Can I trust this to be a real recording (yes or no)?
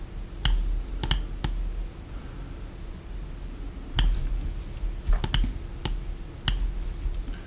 yes